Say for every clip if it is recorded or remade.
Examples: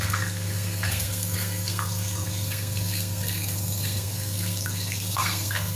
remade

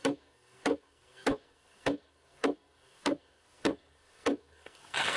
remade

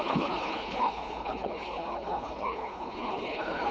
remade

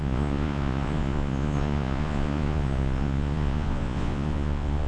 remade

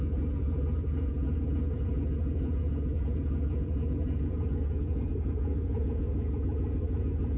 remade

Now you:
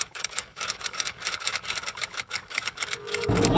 remade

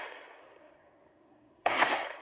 remade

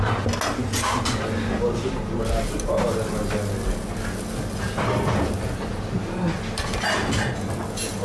recorded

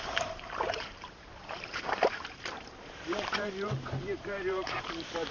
remade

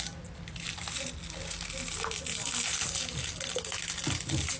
recorded